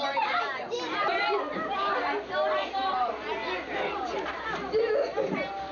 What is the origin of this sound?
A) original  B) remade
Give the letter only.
A